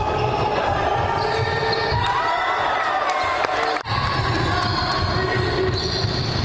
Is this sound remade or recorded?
recorded